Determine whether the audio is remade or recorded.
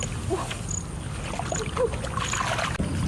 recorded